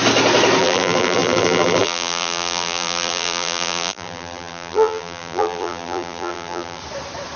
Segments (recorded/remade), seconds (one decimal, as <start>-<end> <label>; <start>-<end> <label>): 0.0-0.6 recorded; 0.6-6.8 remade; 6.8-7.4 recorded